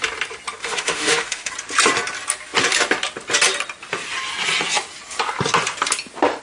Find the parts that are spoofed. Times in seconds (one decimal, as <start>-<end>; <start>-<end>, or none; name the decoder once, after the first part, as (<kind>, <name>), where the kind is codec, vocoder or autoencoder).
0.6-1.5 (autoencoder, DAC-VAE)